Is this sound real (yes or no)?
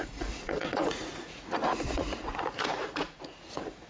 no